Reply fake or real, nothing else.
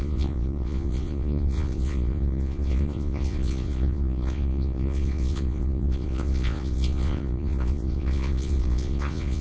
fake